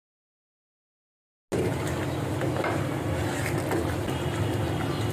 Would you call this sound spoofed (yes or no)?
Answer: no